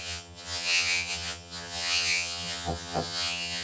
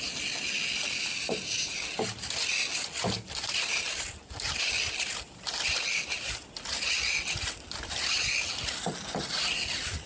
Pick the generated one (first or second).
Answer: first